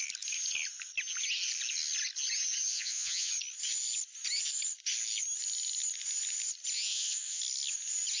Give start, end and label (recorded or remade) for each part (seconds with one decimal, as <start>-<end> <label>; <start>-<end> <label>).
0.0-2.7 recorded; 2.7-3.3 remade; 3.3-6.9 recorded; 6.9-7.4 remade; 7.4-8.2 recorded